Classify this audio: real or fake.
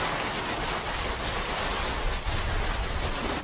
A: real